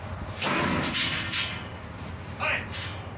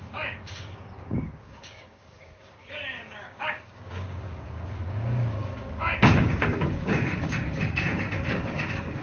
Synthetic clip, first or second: second